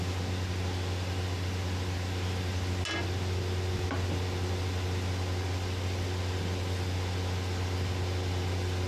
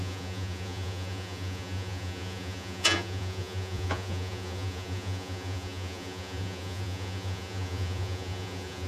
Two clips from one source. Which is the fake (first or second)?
second